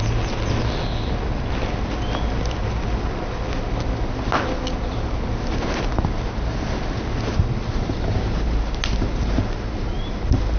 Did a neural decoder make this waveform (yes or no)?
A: no